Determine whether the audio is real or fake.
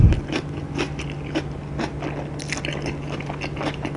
real